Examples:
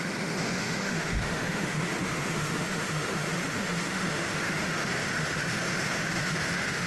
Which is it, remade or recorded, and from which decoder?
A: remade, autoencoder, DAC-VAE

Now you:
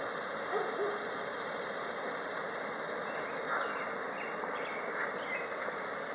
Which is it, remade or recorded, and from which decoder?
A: remade, vocoder, BigVGAN v2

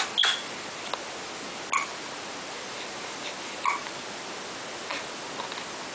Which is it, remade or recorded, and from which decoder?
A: recorded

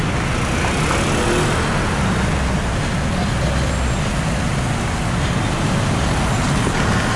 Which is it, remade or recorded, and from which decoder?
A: recorded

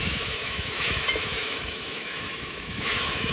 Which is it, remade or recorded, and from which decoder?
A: remade, autoencoder, DAC-VAE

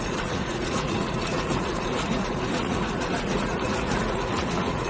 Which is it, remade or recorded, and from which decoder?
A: remade, vocoder, Vocos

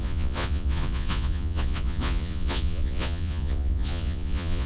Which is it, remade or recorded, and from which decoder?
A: remade, vocoder, Vocos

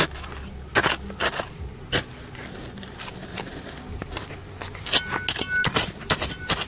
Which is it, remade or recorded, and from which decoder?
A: recorded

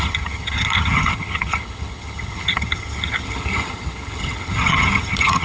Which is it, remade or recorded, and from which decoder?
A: remade, vocoder, HiFi-GAN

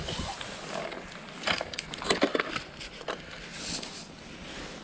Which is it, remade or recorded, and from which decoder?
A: recorded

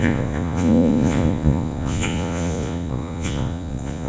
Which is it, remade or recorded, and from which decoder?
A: remade, vocoder, Vocos